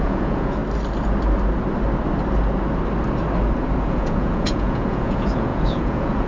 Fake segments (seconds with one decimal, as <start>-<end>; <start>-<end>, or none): 0.0-0.6; 3.8-6.3